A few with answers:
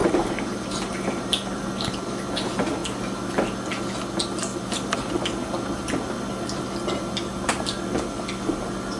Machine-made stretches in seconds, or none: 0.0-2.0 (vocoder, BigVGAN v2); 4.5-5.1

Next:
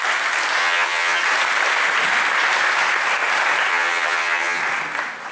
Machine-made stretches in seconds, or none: 0.6-1.2 (vocoder, HiFi-GAN); 3.7-4.6

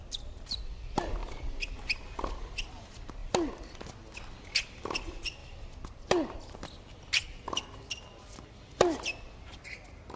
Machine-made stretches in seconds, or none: none

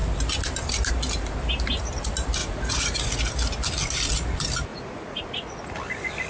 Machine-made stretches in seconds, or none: 2.4-3.2 (vocoder, Vocos); 4.7-5.2

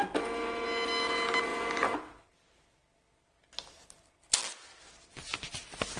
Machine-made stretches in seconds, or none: none

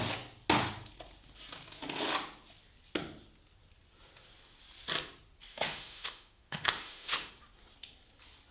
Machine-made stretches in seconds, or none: 5.5-7.3 (autoencoder, DAC-VAE)

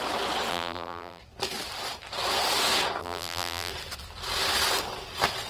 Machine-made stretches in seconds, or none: 0.5-1.2 (vocoder, BigVGAN v2); 3.0-3.7

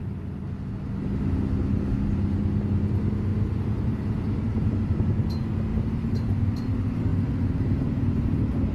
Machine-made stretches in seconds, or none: 3.3-4.7 (vocoder, BigVGAN v2); 5.7-6.3